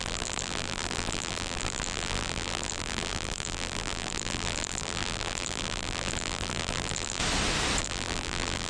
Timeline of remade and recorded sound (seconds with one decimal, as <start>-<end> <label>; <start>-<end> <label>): 0.0-7.2 remade; 7.2-7.8 recorded; 7.8-8.7 remade